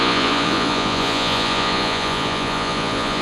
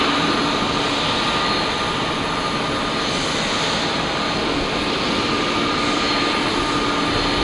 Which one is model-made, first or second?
first